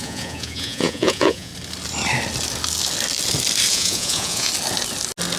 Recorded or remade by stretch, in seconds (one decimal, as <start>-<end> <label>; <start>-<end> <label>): 0.0-1.5 remade; 1.5-3.7 recorded; 3.7-4.5 remade; 4.5-5.4 recorded